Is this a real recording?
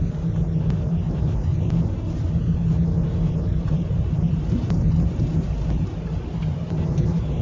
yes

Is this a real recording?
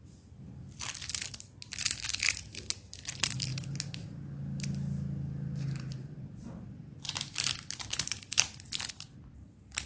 yes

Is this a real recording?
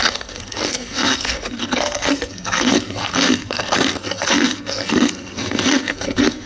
no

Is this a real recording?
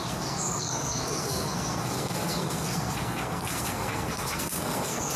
no